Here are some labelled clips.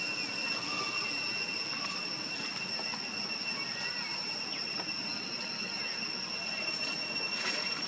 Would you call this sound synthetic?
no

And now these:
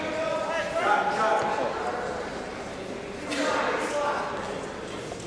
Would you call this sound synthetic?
no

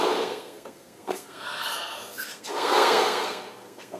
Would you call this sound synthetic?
yes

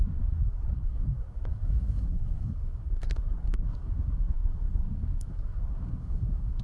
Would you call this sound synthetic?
yes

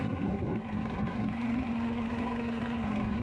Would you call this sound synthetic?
yes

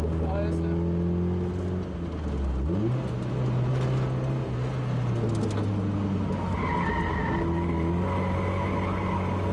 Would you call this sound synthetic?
no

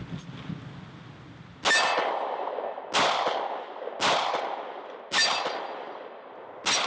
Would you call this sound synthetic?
no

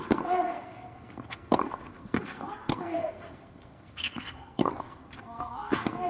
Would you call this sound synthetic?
yes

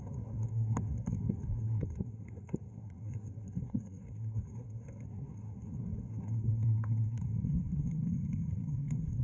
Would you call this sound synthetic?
yes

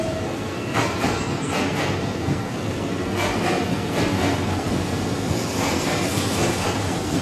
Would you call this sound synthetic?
yes